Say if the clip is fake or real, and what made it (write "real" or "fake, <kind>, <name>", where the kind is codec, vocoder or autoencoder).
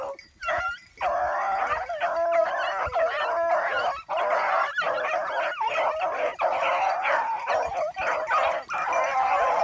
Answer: real